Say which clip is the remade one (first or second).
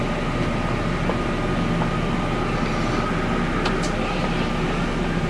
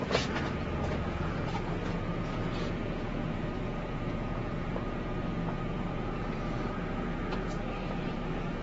second